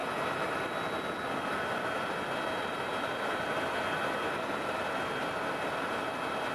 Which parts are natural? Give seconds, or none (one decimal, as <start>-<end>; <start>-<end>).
0.0-6.5